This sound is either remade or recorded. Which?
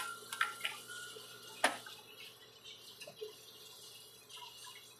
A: recorded